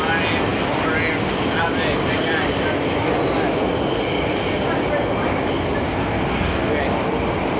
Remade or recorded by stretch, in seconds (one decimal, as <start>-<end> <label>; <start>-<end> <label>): 0.0-6.0 recorded; 6.0-6.7 remade; 6.7-7.6 recorded